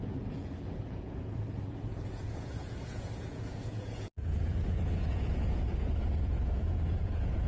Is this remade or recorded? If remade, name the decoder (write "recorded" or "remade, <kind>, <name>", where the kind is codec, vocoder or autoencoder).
remade, vocoder, Vocos